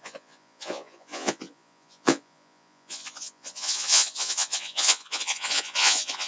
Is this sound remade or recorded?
remade